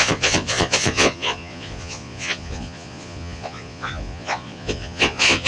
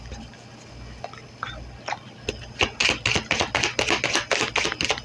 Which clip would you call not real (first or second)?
first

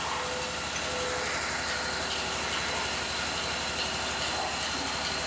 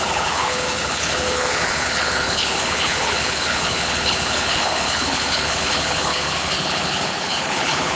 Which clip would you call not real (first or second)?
second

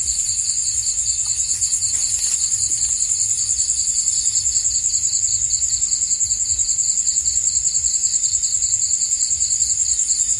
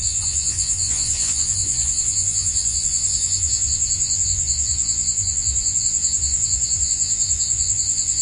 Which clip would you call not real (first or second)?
second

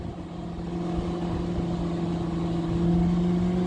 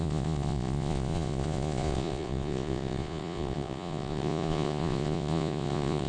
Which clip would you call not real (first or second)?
second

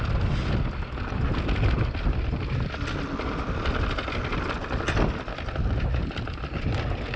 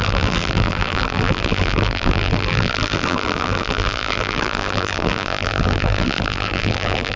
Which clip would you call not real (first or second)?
second